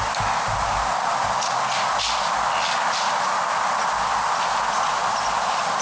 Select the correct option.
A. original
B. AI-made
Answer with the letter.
A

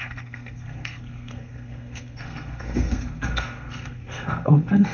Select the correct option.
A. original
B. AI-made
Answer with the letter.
B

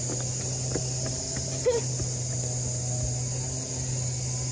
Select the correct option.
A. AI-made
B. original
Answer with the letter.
B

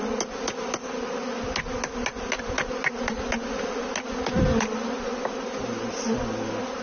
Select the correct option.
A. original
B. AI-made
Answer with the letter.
A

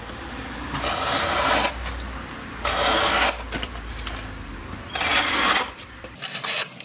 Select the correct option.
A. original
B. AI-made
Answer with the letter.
A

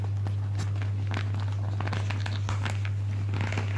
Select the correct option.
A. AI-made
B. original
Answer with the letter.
B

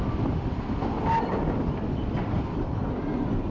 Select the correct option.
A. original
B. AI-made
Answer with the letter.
A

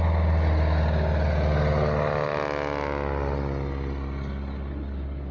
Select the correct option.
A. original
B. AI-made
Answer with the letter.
A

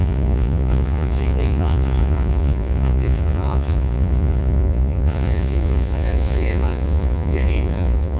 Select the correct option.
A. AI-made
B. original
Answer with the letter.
A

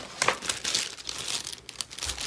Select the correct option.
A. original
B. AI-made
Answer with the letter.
A